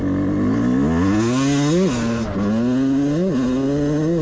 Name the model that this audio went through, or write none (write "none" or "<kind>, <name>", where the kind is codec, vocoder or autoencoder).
none